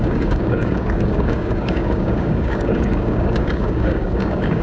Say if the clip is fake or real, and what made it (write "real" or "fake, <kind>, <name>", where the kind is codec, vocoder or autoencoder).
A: fake, codec, DAC